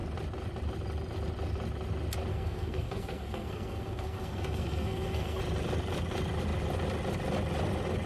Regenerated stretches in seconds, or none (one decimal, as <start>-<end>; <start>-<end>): 2.3-5.4